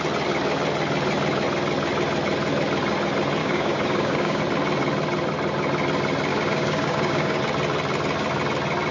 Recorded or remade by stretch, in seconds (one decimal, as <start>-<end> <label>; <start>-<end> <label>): 0.0-3.4 recorded; 3.4-4.4 remade; 4.4-6.3 recorded; 6.3-7.4 remade; 7.4-8.9 recorded